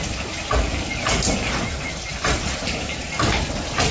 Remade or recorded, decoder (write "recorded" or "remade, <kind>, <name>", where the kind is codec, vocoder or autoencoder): recorded